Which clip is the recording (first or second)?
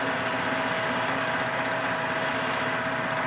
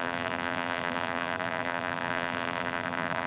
first